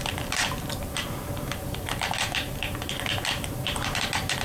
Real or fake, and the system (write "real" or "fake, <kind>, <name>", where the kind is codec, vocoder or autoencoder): fake, vocoder, BigVGAN v2